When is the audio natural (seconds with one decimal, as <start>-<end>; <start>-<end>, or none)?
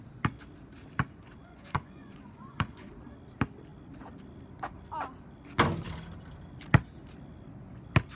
0.0-1.4; 2.9-8.2